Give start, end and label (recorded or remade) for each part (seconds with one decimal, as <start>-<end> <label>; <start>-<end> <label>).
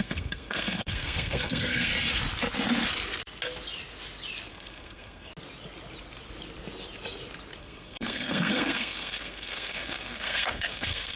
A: 0.0-1.9 remade; 1.9-4.5 recorded; 4.5-5.3 remade; 5.3-7.6 recorded; 7.6-11.2 remade